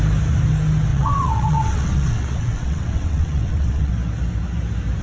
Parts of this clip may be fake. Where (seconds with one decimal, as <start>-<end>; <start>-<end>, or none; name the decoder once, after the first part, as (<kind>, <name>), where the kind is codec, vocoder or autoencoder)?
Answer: 0.9-3.9 (vocoder, WaveNeXt)